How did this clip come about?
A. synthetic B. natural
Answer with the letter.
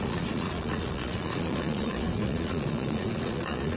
A